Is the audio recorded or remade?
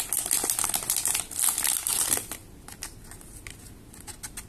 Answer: recorded